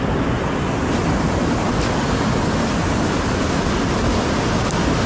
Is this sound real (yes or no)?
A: yes